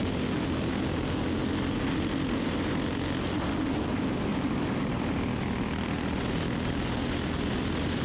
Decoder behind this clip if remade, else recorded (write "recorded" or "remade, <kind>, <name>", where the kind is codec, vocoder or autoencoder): recorded